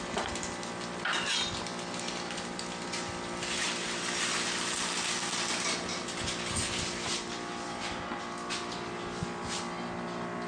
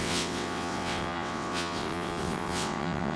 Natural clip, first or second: first